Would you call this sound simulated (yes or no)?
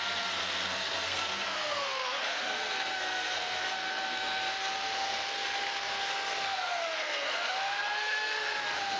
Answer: yes